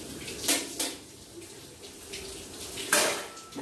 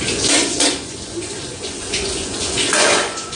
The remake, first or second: second